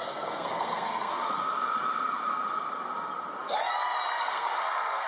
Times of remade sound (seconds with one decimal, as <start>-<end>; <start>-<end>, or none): 0.0-1.1; 4.2-5.1